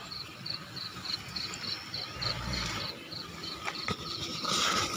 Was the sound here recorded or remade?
recorded